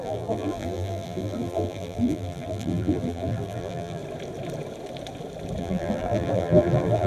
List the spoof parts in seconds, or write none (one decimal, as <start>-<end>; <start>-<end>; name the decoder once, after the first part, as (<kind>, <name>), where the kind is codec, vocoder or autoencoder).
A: 0.0-4.0 (vocoder, BigVGAN v2); 5.6-7.1

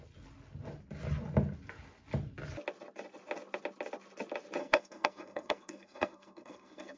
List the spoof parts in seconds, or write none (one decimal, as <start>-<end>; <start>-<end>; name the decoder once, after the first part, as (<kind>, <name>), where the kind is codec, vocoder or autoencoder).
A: 4.6-7.0 (codec, SNAC)